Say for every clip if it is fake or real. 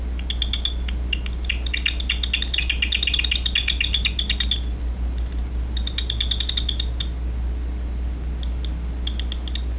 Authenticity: real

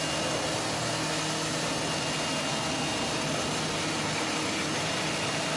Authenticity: real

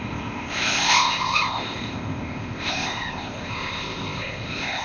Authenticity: fake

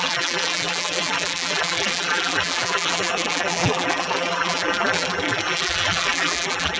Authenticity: fake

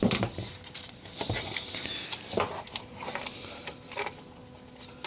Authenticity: real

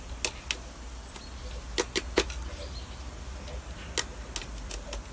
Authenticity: real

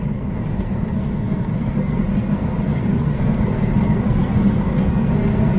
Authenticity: fake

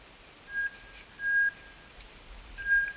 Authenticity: real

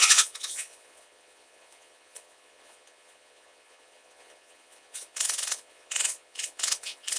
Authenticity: fake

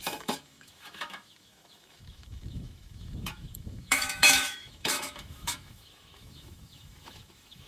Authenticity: fake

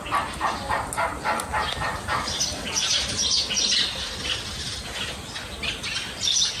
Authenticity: real